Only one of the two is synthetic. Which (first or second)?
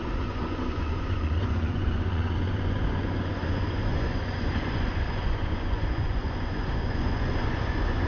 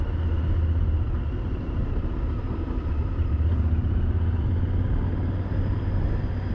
first